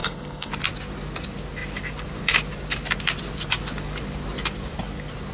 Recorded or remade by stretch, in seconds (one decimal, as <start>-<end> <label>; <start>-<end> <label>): 0.0-0.5 remade; 0.5-5.3 recorded

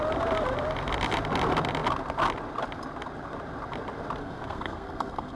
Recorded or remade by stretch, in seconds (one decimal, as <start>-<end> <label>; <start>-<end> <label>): 0.0-4.2 recorded; 4.2-5.4 remade

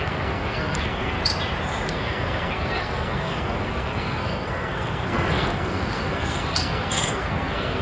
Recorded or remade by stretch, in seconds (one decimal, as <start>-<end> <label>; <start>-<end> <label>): 0.0-1.2 remade; 1.2-1.9 recorded; 1.9-7.8 remade

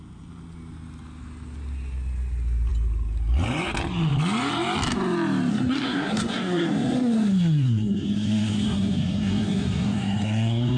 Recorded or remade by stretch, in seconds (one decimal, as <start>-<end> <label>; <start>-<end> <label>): 0.0-5.5 recorded; 5.5-10.8 remade